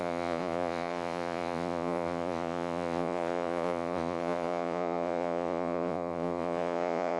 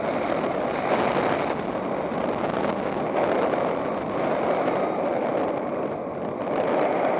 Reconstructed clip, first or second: first